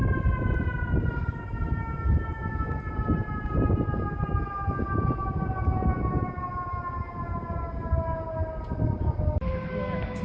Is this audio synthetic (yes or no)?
no